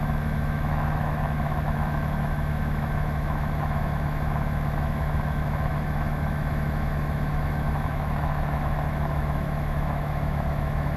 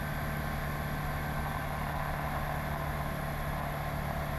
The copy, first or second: first